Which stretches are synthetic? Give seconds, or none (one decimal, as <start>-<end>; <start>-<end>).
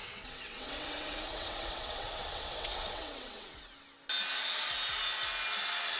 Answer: 0.0-3.6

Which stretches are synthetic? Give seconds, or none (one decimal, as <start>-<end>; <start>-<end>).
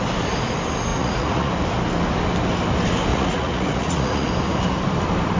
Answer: 0.9-1.5; 3.1-4.3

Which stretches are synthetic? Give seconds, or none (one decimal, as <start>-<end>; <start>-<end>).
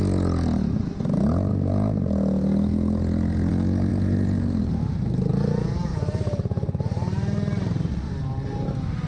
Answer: 3.9-5.3; 5.9-7.9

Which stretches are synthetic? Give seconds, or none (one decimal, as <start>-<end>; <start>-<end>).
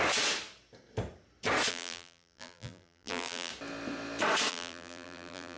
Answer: 1.7-3.5; 4.5-5.6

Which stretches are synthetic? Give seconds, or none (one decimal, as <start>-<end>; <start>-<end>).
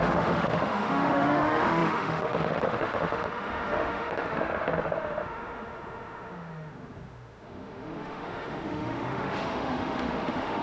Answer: 0.0-10.6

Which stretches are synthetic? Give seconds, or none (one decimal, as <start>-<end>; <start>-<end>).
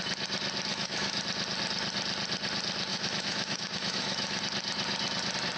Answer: 0.7-1.2; 2.9-4.4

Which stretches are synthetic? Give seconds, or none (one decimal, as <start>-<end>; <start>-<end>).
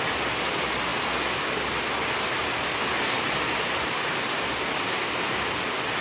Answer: none